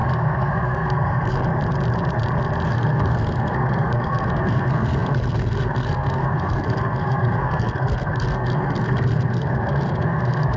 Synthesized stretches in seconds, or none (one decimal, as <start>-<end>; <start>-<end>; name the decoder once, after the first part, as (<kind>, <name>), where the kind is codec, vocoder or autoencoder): 0.0-1.5 (codec, SNAC); 2.7-10.6